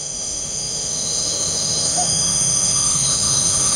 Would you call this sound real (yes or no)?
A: no